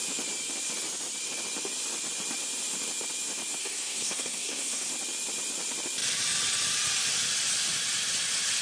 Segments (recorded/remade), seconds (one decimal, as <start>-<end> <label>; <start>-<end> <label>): 0.0-3.6 recorded; 3.6-4.9 remade; 4.9-8.6 recorded